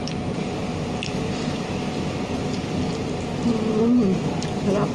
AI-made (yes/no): no